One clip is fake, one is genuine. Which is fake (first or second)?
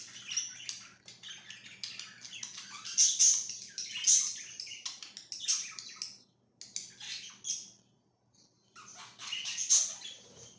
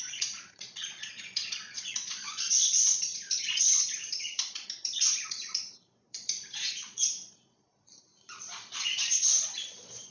second